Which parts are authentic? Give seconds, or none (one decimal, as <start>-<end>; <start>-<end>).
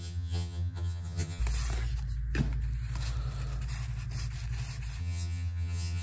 1.4-5.0